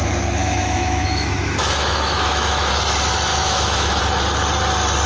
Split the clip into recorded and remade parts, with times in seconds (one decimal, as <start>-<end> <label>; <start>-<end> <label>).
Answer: 0.0-0.4 recorded; 0.4-2.7 remade; 2.7-3.3 recorded; 3.3-4.0 remade; 4.0-5.1 recorded